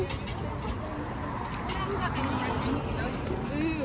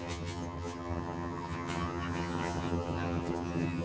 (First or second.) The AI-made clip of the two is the second